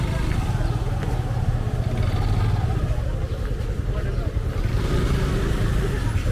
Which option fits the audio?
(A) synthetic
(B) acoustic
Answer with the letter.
B